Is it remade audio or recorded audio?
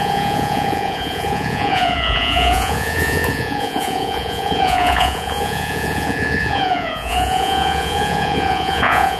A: remade